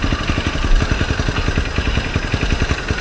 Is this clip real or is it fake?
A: real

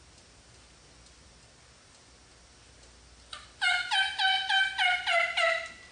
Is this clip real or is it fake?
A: real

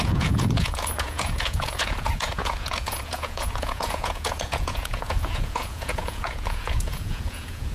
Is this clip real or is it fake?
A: fake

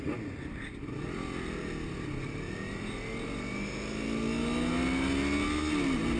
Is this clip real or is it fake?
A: real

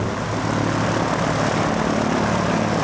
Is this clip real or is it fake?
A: real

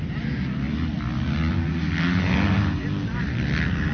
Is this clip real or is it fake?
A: real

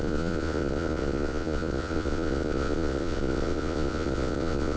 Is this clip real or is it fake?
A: fake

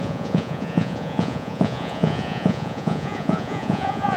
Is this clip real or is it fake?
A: fake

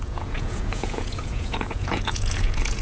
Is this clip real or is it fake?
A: fake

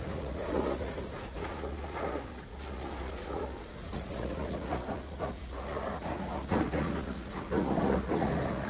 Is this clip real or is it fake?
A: fake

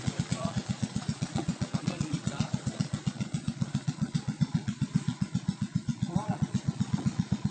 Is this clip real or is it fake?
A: fake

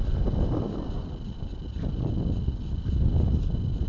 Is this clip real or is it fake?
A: real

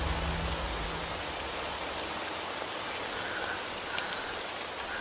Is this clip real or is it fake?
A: real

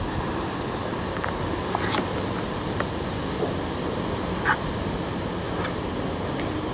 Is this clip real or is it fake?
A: real